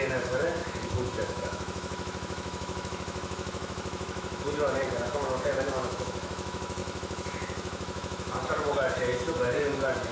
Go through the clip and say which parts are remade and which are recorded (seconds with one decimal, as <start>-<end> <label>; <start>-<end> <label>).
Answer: 0.0-10.1 remade